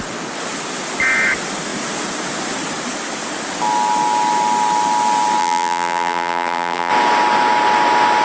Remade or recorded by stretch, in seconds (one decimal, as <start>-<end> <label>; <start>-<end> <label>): 0.0-5.4 recorded; 5.4-6.9 remade; 6.9-8.2 recorded

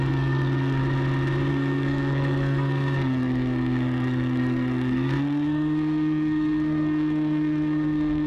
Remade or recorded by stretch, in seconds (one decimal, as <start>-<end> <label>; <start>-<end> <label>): 0.0-0.8 remade; 0.8-1.5 recorded; 1.5-8.3 remade